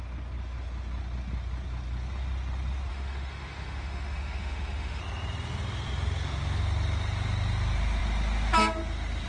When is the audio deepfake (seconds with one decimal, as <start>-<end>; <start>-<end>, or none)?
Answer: 2.9-5.0